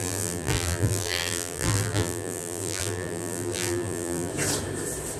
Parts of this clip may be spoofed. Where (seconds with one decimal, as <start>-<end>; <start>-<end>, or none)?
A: 0.0-4.3

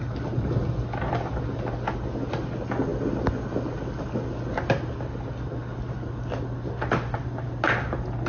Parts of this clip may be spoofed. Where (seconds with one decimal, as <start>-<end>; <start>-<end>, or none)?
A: none

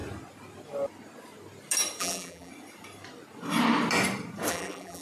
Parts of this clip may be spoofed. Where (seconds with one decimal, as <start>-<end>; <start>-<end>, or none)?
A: 2.0-2.5; 4.5-5.0

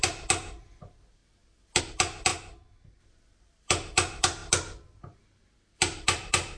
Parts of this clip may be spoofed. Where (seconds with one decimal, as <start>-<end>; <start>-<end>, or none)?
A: 0.0-1.2; 1.8-2.3; 3.0-4.4; 5.8-6.6